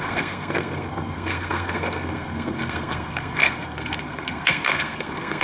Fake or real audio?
fake